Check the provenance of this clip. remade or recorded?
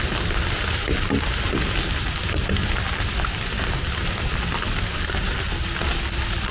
recorded